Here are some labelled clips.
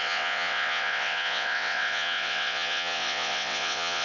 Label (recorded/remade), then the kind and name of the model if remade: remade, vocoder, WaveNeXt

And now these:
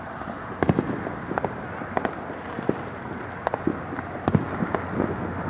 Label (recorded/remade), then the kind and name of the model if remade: recorded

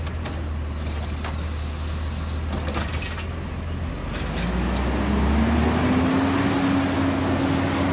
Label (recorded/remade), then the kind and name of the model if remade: recorded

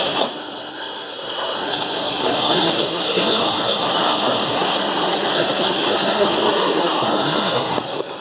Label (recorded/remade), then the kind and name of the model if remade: remade, codec, SNAC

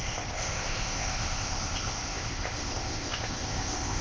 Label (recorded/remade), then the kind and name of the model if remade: remade, codec, ZipCodec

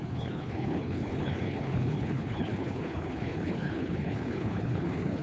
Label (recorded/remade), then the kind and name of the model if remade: remade, codec, HILCodec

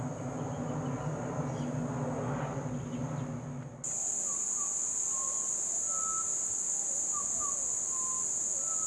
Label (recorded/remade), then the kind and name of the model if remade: recorded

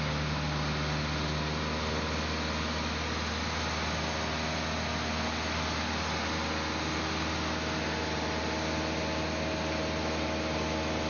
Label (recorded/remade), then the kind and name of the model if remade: recorded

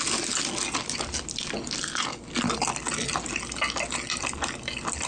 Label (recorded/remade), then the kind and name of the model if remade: recorded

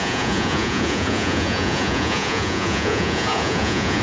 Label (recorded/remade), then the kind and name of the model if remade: remade, vocoder, Vocos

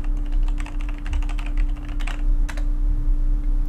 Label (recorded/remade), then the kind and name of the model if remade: recorded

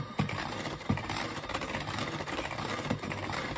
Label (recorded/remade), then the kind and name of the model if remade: remade, vocoder, BigVGAN v2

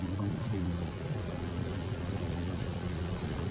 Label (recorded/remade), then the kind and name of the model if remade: remade, vocoder, Vocos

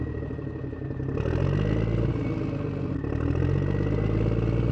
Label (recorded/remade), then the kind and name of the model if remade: recorded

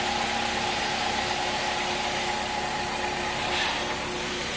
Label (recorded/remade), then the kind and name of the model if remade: recorded